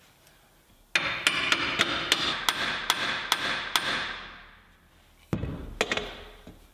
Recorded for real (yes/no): yes